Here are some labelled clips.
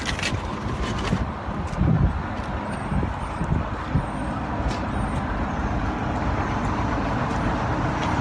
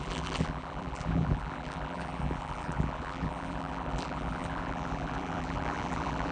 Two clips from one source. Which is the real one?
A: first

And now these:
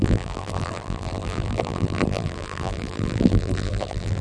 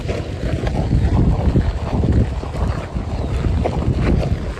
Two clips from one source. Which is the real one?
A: second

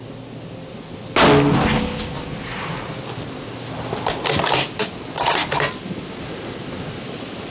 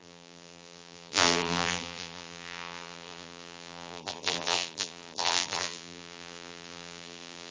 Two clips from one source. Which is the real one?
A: first